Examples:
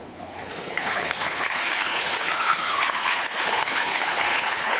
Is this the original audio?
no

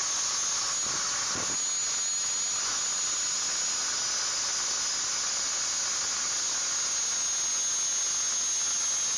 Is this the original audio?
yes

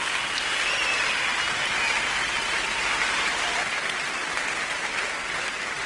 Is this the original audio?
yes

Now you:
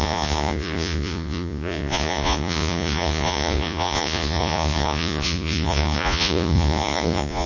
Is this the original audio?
no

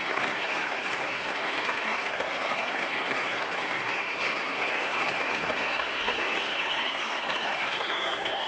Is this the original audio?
no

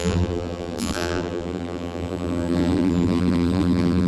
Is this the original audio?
no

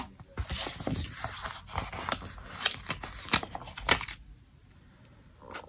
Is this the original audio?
yes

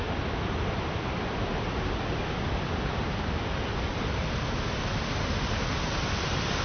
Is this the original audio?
yes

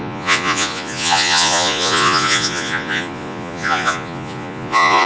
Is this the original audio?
no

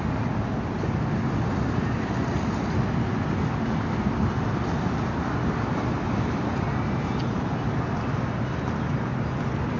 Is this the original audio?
yes